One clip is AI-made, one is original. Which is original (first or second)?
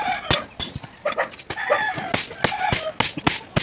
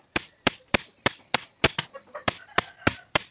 first